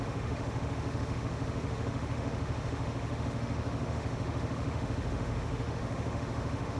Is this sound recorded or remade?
remade